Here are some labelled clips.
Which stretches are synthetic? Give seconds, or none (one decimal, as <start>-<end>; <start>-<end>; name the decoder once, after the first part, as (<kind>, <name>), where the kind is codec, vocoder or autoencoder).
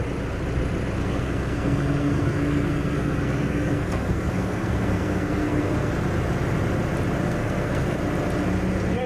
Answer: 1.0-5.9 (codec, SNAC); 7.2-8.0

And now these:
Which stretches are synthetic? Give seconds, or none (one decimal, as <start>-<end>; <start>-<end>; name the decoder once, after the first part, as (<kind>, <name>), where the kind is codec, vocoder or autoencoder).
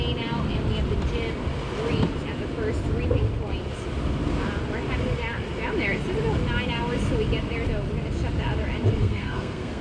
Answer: 9.0-9.8 (codec, SNAC)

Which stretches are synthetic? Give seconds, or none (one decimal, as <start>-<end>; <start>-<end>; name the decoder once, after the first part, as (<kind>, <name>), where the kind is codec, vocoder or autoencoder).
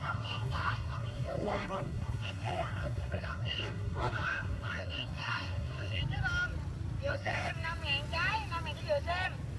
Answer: 0.0-6.0 (codec, SNAC); 7.1-7.5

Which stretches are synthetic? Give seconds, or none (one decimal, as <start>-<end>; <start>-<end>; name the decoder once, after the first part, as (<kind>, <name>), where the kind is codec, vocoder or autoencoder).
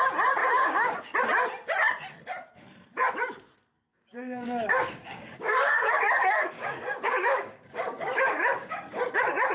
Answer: 0.4-1.0 (codec, DAC); 3.9-9.0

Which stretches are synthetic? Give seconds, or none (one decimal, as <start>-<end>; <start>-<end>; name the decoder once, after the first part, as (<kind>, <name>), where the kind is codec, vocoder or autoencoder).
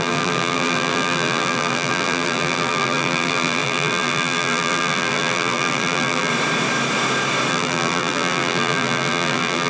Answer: 0.0-6.3 (vocoder, BigVGAN v2); 7.5-9.7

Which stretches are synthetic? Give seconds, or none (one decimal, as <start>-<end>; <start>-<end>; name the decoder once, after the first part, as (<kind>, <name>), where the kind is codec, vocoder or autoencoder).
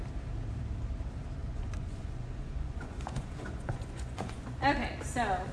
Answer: 1.4-4.6 (vocoder, Vocos)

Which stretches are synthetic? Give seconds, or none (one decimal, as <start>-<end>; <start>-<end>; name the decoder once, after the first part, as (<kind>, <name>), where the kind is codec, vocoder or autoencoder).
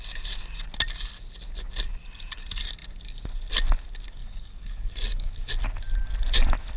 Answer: 4.2-5.5 (codec, DAC)